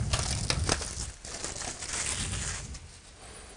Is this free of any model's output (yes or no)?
yes